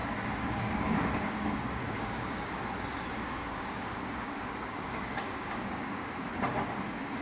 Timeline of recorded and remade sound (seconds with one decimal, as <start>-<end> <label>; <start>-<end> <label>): 0.0-2.6 remade; 2.6-3.1 recorded; 3.1-6.3 remade; 6.3-7.2 recorded